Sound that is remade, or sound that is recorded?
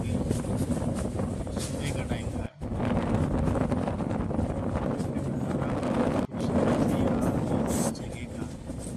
recorded